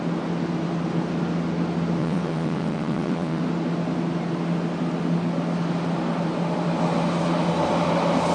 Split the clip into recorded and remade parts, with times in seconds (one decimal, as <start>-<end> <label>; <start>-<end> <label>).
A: 0.0-2.0 recorded; 2.0-3.4 remade; 3.4-8.3 recorded